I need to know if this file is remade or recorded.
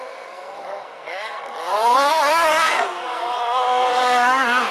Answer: remade